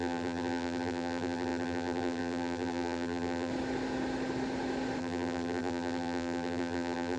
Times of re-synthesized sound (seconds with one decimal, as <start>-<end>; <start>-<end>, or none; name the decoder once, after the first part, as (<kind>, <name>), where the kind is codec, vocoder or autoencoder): 0.0-3.5 (vocoder, BigVGAN v2); 5.0-7.2

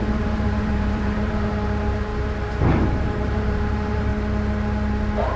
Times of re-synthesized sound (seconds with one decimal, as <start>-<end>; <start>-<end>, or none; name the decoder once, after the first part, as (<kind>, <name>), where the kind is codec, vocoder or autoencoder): 0.0-2.1 (vocoder, BigVGAN v2); 2.9-4.1

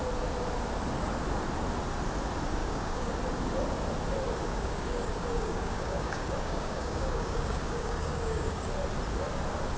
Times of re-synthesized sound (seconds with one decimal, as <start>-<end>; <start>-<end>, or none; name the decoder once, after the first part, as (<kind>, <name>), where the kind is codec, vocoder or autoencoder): 2.6-3.1 (codec, DAC); 4.5-8.7

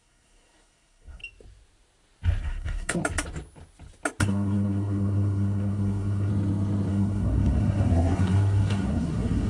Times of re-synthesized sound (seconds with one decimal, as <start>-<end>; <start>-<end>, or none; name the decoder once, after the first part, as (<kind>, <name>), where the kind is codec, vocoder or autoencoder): 0.0-1.2 (codec, SNAC); 2.4-3.0; 4.2-6.3; 6.9-9.5

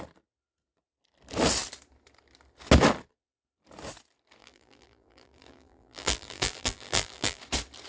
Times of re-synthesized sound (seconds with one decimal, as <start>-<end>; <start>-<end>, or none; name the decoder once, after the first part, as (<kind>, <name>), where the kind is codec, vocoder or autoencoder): 4.4-7.4 (vocoder, BigVGAN v2)

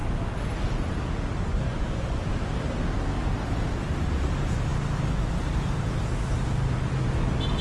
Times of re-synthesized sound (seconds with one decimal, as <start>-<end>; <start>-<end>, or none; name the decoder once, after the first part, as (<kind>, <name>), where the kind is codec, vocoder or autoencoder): 1.5-2.3 (vocoder, Vocos)

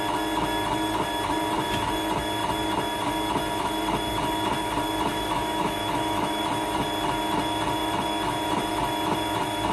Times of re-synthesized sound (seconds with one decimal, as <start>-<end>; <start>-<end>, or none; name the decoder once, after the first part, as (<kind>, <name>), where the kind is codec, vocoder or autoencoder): 5.1-6.4 (autoencoder, DAC-VAE)

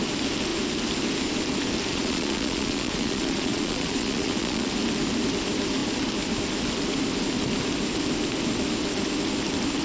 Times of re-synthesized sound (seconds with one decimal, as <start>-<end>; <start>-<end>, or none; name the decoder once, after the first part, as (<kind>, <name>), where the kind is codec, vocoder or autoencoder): 1.9-4.7 (vocoder, Vocos)